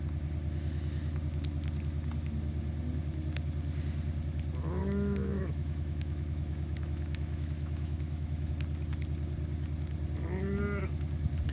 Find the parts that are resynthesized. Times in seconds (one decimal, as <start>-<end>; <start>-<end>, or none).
4.8-8.5

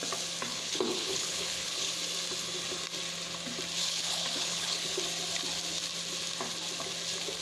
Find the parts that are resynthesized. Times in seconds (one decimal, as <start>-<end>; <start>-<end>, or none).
0.5-1.9; 3.8-5.0

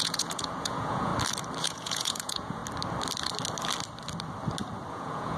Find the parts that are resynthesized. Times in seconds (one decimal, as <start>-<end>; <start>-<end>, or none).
0.0-1.1; 1.6-2.6; 4.9-5.4